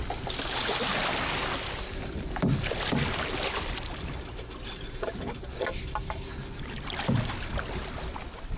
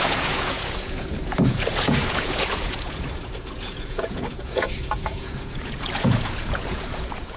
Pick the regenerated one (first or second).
second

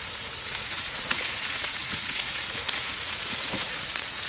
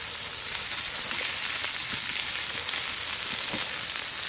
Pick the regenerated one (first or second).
first